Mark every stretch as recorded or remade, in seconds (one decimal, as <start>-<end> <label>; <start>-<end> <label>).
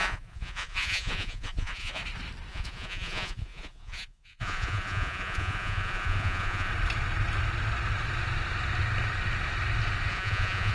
0.0-2.0 remade; 2.0-2.5 recorded; 2.5-6.7 remade; 6.7-10.1 recorded; 10.1-10.7 remade